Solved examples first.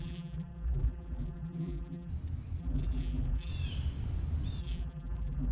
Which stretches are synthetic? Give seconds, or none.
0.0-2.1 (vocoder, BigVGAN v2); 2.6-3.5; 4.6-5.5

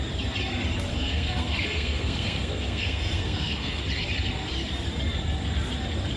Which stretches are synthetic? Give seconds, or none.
0.9-3.8 (codec, SNAC)

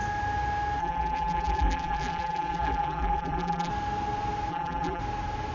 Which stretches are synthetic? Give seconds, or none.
0.8-3.7 (vocoder, BigVGAN v2); 4.5-5.0

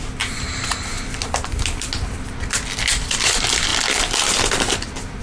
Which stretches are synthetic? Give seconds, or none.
none